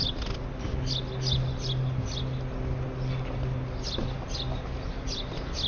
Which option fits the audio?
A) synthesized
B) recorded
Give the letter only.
B